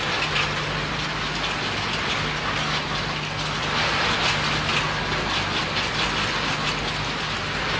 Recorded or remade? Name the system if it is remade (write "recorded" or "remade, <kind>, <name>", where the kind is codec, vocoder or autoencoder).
recorded